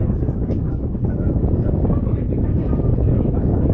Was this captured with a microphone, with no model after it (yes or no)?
no